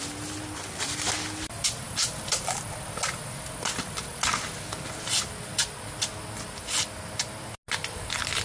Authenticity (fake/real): real